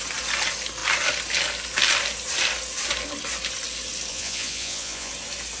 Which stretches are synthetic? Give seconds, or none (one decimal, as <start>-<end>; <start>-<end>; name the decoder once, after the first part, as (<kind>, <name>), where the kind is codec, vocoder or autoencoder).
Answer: 4.1-5.1 (vocoder, Vocos)